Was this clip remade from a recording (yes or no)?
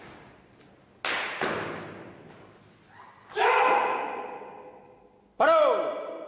no